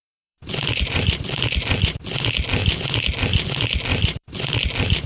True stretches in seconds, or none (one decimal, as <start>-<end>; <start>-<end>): 2.0-3.9; 4.6-5.1